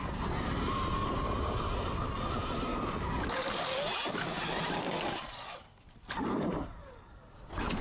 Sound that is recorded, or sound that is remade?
recorded